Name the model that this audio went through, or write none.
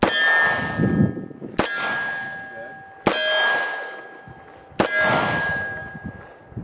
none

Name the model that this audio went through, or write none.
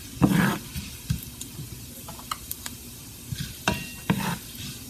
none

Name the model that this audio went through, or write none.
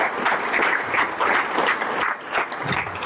none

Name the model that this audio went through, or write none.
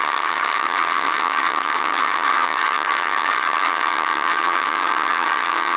vocoder, HiFi-GAN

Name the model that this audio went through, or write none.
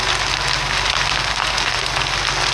none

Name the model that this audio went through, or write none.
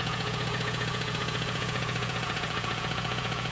vocoder, Vocos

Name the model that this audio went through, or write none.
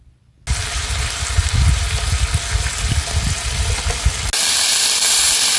none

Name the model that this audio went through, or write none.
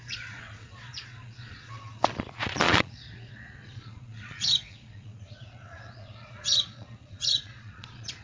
vocoder, Vocos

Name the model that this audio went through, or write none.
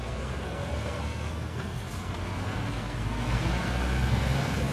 codec, SNAC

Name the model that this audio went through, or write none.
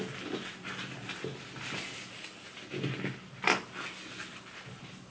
none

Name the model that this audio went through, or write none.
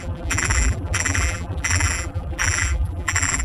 vocoder, BigVGAN v2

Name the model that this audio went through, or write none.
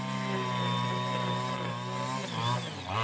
none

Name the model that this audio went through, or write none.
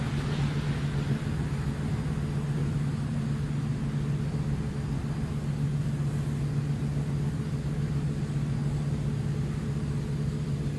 none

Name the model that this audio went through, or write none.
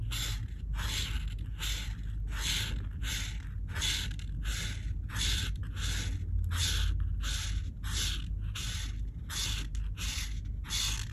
none